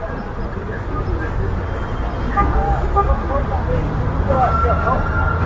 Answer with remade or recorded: recorded